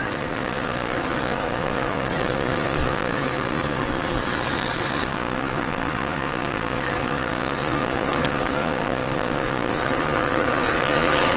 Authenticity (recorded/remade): remade